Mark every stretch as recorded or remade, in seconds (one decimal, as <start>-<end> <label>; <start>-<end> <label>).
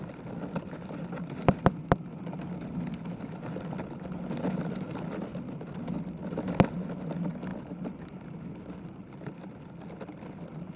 0.0-10.8 recorded